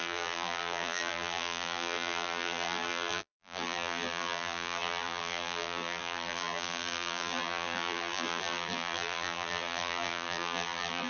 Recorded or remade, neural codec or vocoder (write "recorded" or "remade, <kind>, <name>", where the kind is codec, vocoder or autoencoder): remade, vocoder, BigVGAN v2